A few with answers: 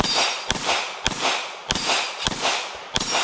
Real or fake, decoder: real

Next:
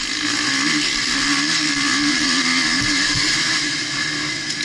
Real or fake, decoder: real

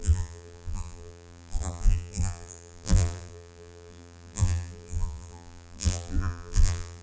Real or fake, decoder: fake, vocoder, BigVGAN v2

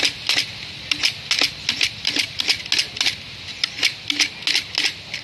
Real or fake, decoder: real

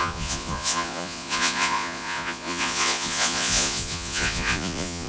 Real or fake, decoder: fake, vocoder, Vocos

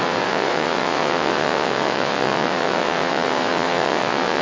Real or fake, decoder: fake, vocoder, WaveNeXt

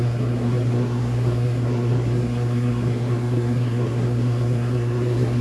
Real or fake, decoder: fake, codec, SNAC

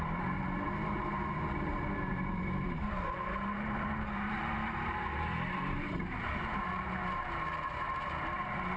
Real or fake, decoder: fake, vocoder, BigVGAN v2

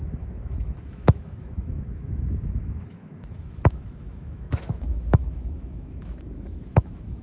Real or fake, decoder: fake, autoencoder, DAC-VAE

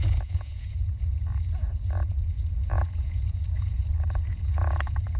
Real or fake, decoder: fake, vocoder, Vocos